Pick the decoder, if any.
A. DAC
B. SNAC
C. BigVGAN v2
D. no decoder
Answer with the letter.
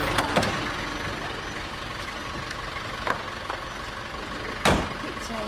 D